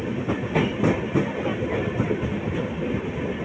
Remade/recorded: recorded